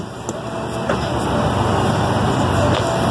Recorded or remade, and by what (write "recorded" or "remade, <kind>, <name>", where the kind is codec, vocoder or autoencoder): recorded